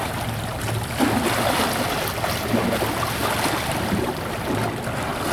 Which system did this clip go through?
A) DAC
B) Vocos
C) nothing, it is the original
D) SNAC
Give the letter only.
C